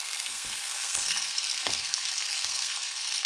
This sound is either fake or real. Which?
fake